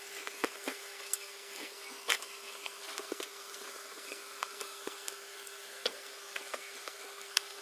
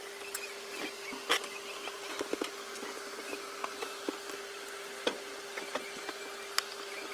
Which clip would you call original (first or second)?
second